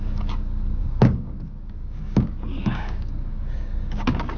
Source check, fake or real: fake